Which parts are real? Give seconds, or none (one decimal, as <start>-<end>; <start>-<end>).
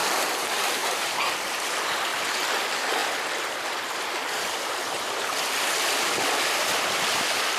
2.1-2.6